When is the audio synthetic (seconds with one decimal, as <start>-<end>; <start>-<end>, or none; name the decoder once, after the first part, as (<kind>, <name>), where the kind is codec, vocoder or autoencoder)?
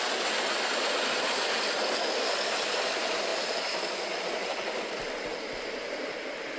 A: none